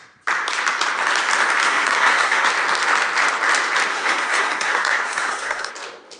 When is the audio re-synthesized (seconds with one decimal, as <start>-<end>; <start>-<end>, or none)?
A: 1.6-2.5; 3.9-5.7